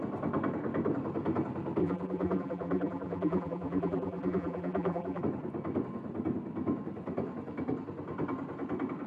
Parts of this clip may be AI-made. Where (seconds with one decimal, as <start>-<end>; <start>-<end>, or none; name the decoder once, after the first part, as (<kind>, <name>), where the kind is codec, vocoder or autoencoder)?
1.8-5.2 (vocoder, BigVGAN v2)

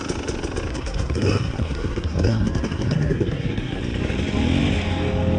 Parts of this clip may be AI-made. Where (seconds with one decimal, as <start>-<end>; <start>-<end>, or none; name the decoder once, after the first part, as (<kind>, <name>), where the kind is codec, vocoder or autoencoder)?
0.7-3.8 (codec, SNAC)

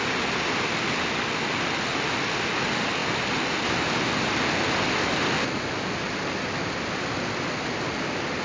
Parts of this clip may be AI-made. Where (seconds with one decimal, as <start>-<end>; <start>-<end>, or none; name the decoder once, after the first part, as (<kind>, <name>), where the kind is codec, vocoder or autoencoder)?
none

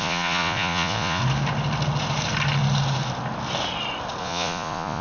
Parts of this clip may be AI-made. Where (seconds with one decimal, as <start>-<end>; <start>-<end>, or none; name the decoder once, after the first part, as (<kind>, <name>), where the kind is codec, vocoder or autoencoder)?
0.0-1.2 (vocoder, Vocos); 4.2-5.0

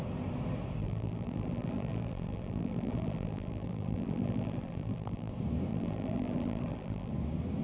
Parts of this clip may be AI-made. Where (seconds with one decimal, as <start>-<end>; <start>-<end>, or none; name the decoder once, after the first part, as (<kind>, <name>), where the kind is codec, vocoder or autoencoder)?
0.8-5.3 (vocoder, BigVGAN v2); 5.7-7.1

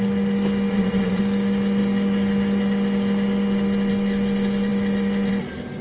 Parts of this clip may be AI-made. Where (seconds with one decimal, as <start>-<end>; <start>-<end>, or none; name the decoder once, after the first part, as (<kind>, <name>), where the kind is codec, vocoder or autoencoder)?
0.7-1.2 (vocoder, Vocos)

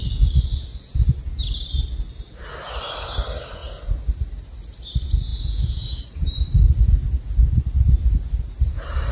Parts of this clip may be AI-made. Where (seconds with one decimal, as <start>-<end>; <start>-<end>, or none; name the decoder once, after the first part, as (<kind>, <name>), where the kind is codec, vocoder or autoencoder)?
none